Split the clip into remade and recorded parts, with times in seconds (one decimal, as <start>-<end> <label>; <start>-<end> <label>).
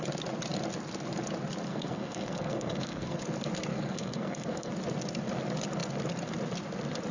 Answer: 0.0-1.7 recorded; 1.7-3.2 remade; 3.2-3.7 recorded; 3.7-4.7 remade; 4.7-7.1 recorded